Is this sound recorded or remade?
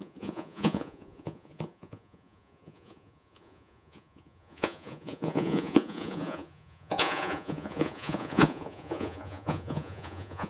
remade